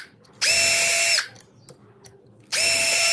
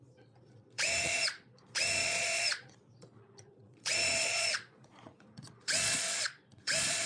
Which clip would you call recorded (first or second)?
first